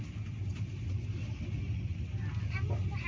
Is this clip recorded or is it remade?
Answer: recorded